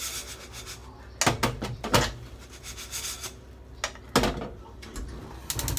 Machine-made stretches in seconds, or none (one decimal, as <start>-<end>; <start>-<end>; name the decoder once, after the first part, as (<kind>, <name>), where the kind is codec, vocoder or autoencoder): none